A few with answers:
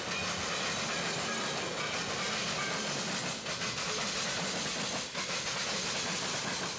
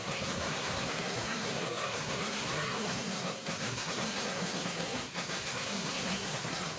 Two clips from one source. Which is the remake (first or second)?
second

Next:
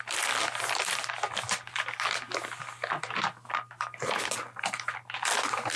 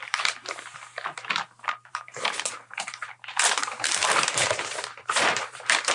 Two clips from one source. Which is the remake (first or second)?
second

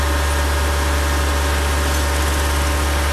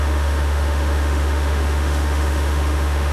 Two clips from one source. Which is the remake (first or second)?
second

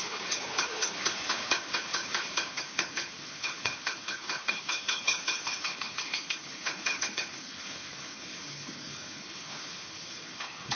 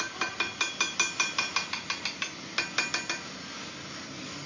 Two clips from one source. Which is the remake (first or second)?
first